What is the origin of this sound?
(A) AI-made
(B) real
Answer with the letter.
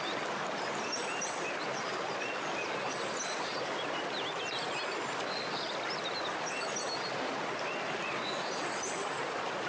B